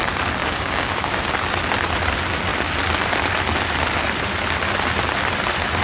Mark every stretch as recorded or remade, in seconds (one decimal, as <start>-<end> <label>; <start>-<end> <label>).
0.0-0.4 recorded; 0.4-1.2 remade; 1.2-5.8 recorded